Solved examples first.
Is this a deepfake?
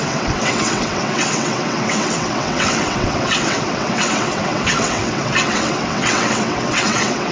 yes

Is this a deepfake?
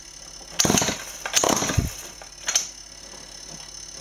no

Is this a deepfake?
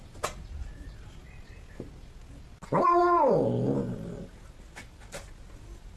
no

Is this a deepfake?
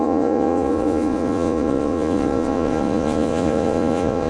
yes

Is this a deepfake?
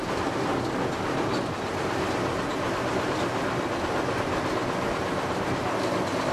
no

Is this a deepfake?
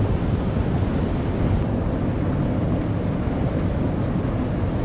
no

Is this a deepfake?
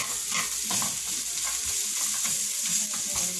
no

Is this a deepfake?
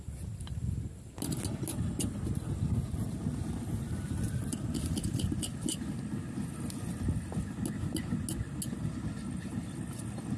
no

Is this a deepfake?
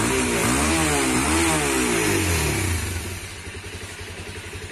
no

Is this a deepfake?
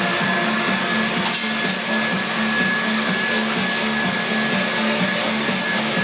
no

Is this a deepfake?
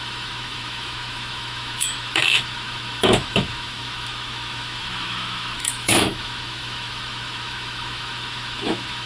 yes